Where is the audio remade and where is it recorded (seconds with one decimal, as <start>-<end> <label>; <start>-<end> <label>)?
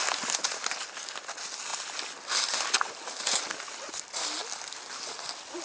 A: 0.0-5.6 recorded